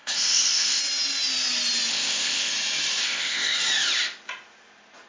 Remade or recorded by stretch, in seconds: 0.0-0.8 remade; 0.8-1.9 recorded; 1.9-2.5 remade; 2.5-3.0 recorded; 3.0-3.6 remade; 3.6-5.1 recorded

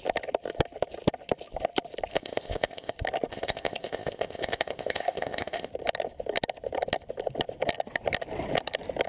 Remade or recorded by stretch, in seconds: 0.0-2.1 recorded; 2.1-2.9 remade; 2.9-3.3 recorded; 3.3-5.7 remade; 5.7-9.1 recorded